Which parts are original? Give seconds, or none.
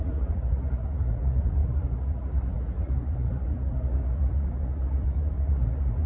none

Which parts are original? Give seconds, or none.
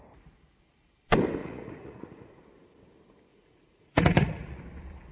0.0-1.4; 2.4-3.3; 4.6-5.1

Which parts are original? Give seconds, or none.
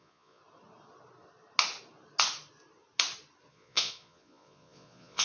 0.4-3.5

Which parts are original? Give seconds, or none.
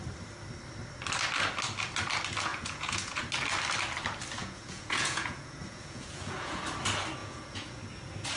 0.0-2.5; 3.2-4.4; 6.6-7.2; 7.8-8.4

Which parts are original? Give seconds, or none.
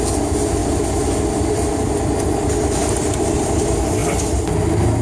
0.0-5.0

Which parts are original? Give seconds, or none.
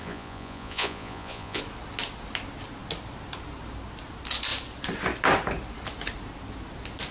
1.6-7.1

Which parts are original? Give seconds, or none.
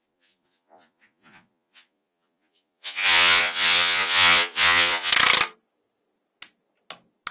5.1-7.3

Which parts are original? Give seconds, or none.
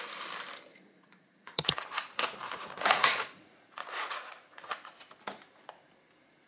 0.0-0.7; 1.8-2.6; 4.9-6.5